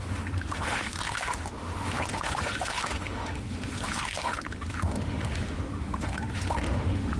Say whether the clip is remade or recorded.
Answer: remade